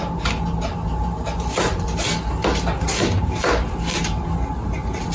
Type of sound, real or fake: real